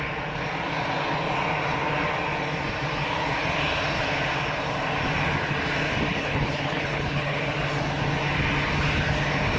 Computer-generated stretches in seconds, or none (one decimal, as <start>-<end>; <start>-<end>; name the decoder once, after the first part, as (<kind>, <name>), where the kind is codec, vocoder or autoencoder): 6.1-7.4 (codec, HILCodec)